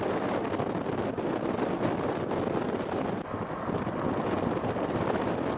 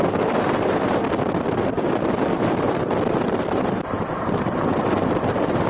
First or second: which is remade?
second